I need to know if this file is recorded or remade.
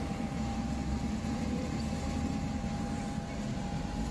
remade